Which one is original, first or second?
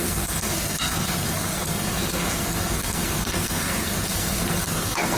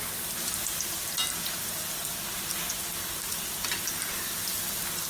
second